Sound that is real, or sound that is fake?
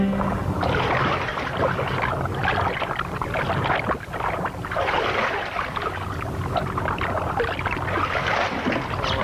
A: real